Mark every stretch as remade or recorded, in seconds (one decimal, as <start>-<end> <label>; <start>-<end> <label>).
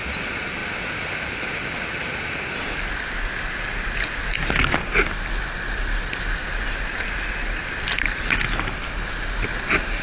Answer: 0.0-10.0 recorded